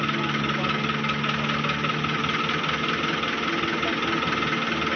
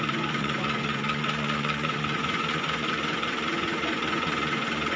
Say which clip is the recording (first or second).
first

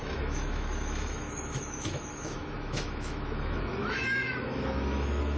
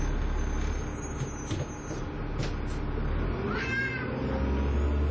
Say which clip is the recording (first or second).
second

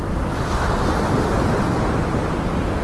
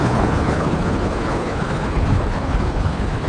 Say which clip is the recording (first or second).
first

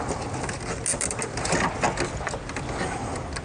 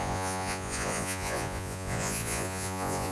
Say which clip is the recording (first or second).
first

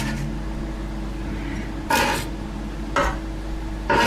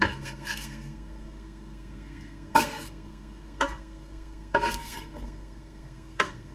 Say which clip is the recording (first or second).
first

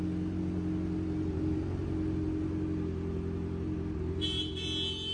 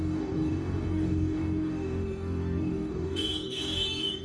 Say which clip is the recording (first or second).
first